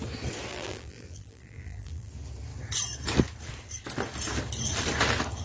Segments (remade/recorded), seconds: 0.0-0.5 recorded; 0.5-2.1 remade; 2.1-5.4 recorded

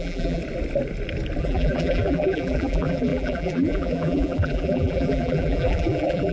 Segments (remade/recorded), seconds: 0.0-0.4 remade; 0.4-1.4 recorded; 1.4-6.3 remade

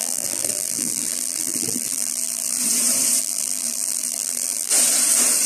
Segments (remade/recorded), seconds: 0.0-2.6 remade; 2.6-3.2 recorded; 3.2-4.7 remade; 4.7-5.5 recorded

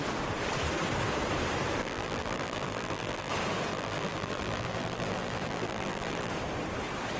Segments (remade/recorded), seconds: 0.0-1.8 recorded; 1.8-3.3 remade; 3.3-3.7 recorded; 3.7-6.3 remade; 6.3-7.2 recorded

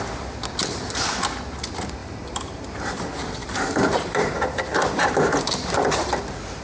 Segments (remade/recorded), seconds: 0.0-2.0 recorded; 2.0-2.6 remade; 2.6-3.4 recorded; 3.4-6.1 remade; 6.1-6.6 recorded

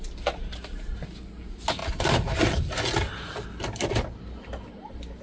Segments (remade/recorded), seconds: 0.0-1.8 recorded; 1.8-4.3 remade; 4.3-5.2 recorded